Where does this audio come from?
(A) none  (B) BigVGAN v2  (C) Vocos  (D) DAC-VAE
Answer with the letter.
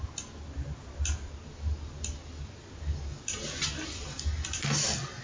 A